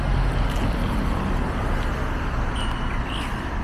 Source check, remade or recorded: recorded